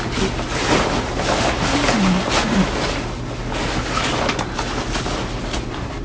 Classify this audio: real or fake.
real